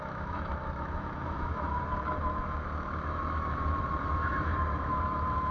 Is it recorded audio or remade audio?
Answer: remade